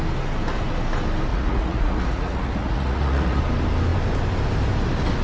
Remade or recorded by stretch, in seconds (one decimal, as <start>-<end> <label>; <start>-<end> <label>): 0.0-1.3 recorded; 1.3-3.4 remade; 3.4-5.2 recorded